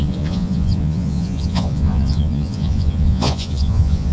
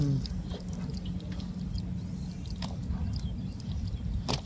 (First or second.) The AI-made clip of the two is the first